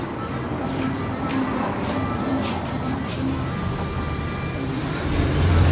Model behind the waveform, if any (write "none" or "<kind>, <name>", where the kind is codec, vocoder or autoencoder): vocoder, BigVGAN v2